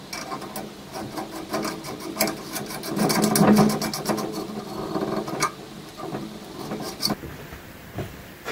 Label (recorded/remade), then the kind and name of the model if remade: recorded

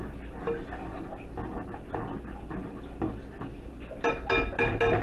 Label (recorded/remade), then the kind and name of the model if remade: recorded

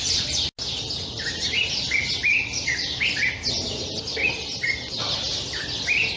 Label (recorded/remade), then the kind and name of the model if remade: recorded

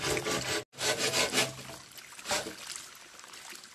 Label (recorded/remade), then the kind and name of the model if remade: recorded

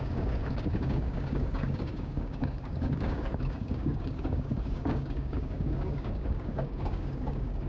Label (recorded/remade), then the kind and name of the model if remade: remade, codec, DAC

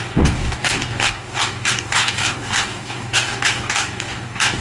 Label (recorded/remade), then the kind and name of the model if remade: remade, codec, DAC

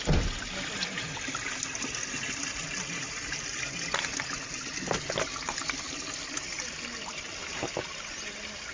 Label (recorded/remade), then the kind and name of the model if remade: recorded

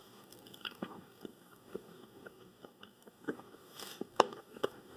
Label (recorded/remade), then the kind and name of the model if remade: remade, codec, DAC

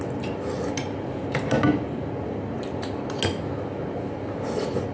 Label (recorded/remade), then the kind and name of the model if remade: recorded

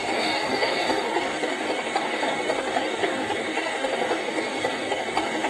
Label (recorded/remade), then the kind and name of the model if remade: remade, codec, DAC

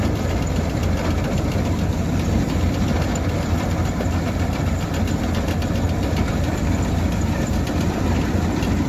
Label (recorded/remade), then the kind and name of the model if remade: recorded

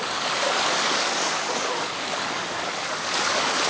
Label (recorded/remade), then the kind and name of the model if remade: remade, codec, DAC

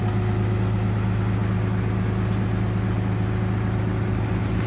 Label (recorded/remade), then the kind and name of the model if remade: recorded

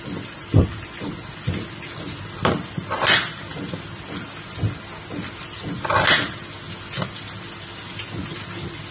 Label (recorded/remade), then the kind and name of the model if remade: recorded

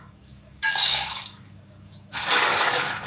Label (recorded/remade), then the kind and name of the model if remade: remade, codec, DAC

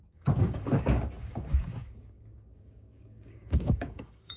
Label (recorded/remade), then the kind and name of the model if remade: remade, codec, DAC